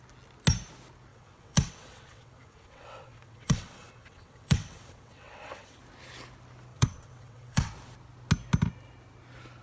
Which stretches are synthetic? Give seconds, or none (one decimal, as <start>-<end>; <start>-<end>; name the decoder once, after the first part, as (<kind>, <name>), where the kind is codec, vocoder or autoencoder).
1.1-5.8 (vocoder, WaveNeXt); 6.7-7.7